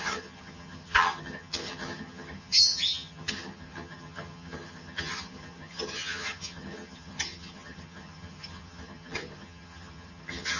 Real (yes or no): no